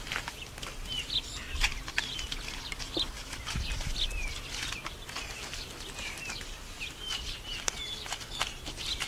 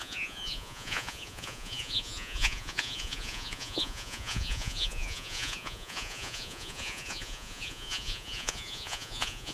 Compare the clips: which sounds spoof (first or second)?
second